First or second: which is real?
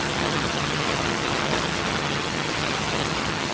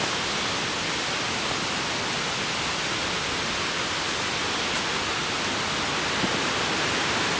second